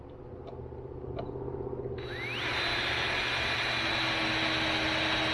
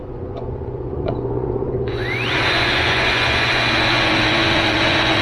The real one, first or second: first